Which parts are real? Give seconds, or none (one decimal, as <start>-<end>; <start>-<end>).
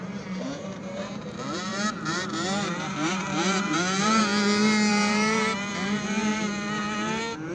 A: 4.2-4.9